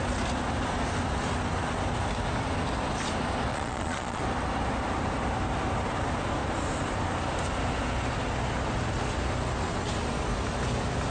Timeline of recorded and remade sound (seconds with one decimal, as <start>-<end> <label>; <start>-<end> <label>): 0.0-3.5 recorded; 3.5-4.2 remade; 4.2-11.1 recorded